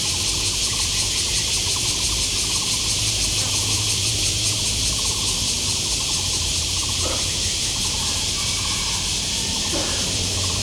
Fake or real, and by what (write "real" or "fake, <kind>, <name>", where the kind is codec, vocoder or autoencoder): fake, vocoder, BigVGAN v2